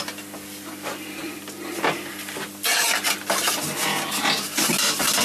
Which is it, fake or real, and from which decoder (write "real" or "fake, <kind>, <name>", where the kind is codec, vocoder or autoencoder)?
real